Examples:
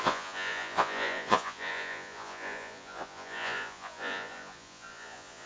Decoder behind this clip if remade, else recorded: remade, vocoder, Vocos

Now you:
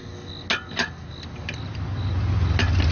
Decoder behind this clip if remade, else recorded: recorded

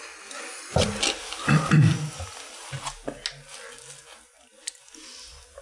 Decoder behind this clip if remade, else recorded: recorded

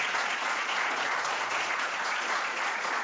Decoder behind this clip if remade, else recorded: remade, vocoder, Vocos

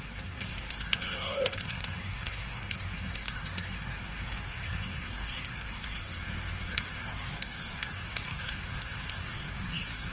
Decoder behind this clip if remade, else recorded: remade, codec, SNAC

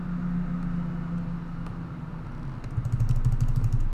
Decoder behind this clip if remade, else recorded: recorded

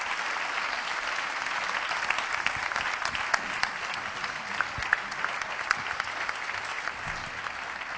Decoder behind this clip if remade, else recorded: recorded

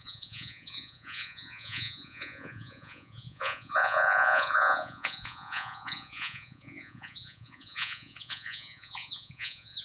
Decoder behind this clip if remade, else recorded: remade, vocoder, Vocos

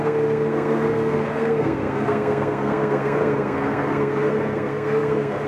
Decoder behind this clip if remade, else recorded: remade, codec, SNAC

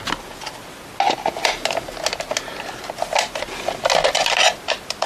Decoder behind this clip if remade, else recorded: recorded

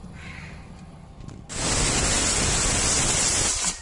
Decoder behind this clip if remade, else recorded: recorded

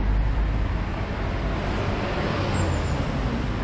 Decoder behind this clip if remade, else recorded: recorded